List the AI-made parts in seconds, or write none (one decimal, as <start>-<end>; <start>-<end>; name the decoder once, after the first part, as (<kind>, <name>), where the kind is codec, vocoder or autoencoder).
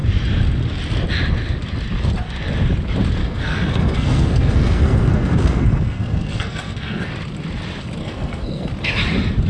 3.2-7.1 (codec, SNAC); 8.0-8.7